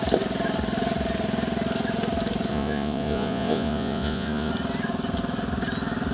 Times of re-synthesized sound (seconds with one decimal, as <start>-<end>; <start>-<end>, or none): 2.5-4.5